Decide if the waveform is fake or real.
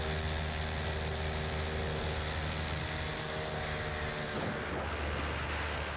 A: real